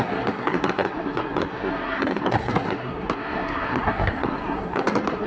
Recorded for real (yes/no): no